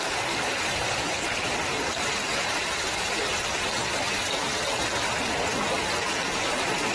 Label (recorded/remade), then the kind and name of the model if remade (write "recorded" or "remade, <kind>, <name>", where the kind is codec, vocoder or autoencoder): remade, vocoder, BigVGAN v2